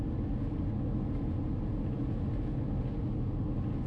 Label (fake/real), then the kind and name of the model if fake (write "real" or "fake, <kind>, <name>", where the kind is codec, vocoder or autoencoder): real